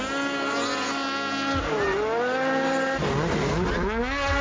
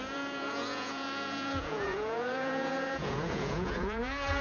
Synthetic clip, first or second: second